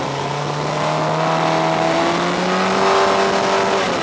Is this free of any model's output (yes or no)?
yes